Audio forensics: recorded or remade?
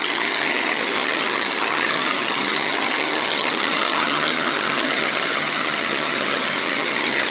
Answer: remade